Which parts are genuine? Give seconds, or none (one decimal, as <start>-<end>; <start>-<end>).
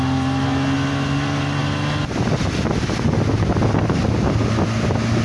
0.0-5.2